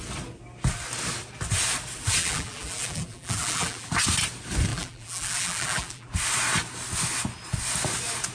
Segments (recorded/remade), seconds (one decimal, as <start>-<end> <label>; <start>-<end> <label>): 0.0-2.2 recorded; 2.2-3.9 remade; 3.9-4.7 recorded; 4.7-6.1 remade; 6.1-8.3 recorded